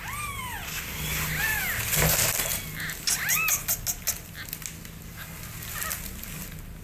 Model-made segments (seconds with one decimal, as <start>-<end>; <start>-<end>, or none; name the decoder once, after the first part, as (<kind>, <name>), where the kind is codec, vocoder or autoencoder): none